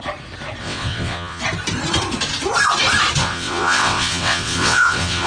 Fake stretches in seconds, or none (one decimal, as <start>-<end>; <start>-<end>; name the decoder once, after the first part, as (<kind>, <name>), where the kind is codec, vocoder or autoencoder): 0.6-1.4 (vocoder, WaveNeXt); 3.2-5.3